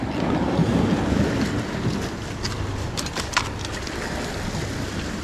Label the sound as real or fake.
real